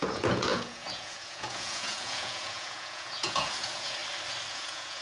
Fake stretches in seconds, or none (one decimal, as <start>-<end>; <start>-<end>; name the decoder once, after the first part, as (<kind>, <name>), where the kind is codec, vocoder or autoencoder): 0.0-4.0 (vocoder, Vocos); 4.5-5.0